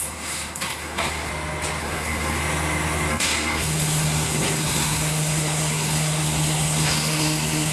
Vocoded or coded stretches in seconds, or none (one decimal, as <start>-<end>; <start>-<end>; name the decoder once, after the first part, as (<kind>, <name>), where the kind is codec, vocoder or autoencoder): 0.0-1.3 (codec, SNAC); 1.8-2.4; 3.1-7.7